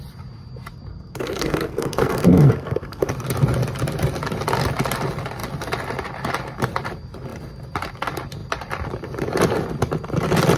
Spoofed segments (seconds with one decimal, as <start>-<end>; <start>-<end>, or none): 0.9-3.1